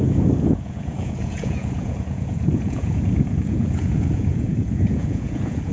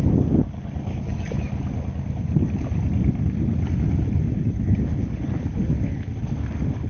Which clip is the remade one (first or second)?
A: first